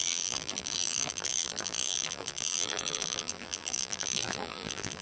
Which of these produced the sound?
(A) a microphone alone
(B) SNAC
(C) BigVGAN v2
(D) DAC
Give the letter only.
C